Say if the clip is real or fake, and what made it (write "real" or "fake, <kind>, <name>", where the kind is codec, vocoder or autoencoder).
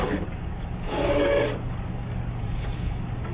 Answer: fake, codec, DAC